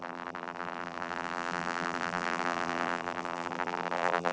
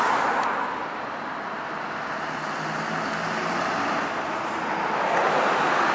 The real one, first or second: second